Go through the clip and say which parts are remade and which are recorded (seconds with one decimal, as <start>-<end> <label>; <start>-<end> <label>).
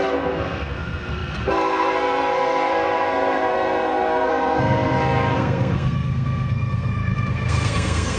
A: 0.0-8.2 remade